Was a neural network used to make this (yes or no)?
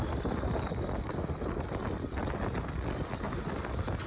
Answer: no